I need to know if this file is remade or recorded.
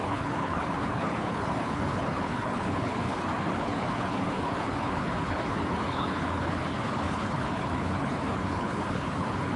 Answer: remade